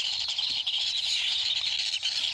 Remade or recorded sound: recorded